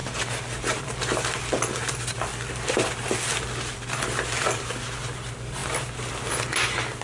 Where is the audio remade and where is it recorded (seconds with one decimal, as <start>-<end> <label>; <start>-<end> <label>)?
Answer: 0.0-7.0 recorded